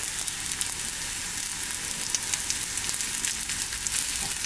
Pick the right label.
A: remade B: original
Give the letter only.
B